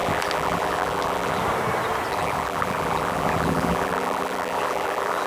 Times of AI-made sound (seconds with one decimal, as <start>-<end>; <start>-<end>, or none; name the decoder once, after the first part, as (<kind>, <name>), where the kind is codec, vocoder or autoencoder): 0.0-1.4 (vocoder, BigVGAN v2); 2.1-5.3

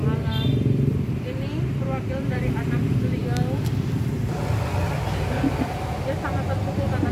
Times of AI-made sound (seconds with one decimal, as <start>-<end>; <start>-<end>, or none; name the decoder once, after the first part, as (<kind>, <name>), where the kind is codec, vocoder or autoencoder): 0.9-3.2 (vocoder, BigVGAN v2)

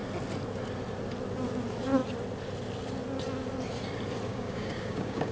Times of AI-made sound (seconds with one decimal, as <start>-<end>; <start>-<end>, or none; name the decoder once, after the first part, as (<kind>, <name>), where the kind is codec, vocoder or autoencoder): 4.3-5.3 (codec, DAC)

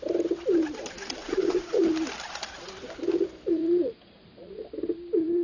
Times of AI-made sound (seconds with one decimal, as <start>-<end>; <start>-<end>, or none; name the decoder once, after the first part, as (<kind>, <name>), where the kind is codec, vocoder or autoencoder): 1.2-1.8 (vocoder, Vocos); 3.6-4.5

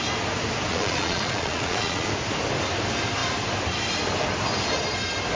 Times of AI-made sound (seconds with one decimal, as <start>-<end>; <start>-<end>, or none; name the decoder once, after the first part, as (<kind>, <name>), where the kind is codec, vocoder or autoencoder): 0.7-2.1 (vocoder, Vocos)

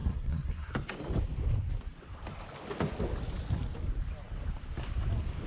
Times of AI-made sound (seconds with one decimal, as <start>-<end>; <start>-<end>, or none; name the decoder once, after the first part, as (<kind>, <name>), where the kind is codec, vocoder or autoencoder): 0.0-0.7 (codec, SNAC)

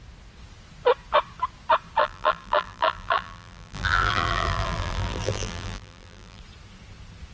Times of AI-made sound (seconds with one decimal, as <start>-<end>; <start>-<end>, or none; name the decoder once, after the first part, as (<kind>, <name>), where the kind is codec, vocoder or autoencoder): 2.0-6.4 (vocoder, BigVGAN v2)